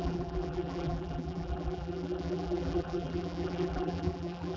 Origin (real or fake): fake